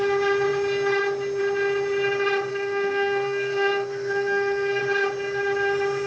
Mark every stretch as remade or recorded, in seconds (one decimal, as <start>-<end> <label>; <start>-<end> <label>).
0.0-2.5 recorded; 2.5-4.8 remade; 4.8-6.1 recorded